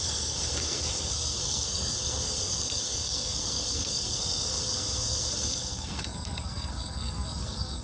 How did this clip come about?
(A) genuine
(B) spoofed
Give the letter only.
B